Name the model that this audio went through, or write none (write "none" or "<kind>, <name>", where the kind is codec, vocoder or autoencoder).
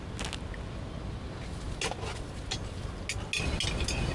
none